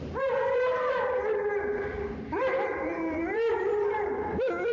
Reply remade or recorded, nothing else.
remade